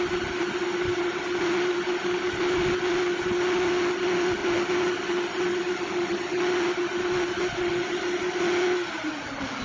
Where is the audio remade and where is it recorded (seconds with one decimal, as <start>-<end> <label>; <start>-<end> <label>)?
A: 0.0-9.6 recorded